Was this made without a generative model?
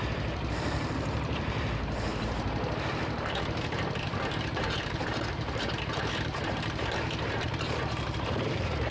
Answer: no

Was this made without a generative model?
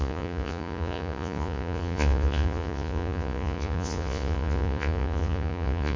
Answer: no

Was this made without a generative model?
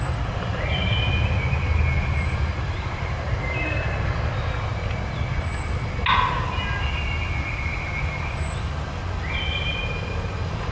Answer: yes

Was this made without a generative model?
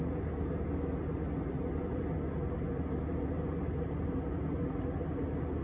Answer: yes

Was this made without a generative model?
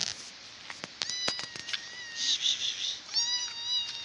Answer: yes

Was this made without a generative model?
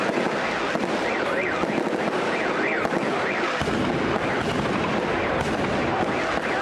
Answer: yes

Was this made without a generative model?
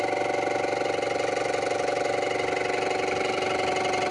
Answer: yes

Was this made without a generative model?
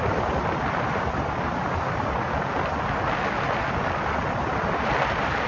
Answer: yes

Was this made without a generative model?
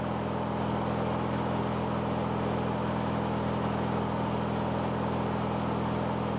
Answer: yes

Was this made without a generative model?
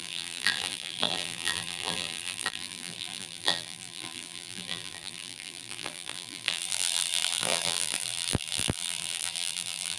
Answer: no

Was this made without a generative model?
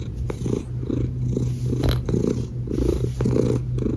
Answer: yes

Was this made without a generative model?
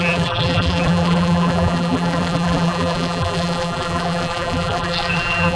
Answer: no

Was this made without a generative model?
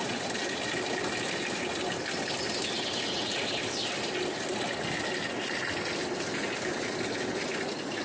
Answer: yes